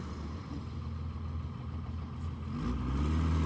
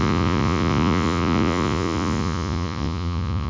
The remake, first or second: second